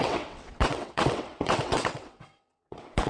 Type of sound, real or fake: fake